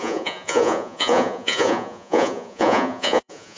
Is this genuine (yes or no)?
no